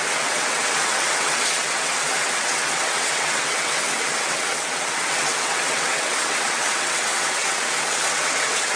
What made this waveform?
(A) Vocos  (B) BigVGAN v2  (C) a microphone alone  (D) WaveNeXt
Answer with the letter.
D